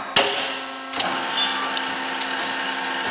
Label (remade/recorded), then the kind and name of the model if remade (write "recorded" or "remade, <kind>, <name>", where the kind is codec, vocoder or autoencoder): recorded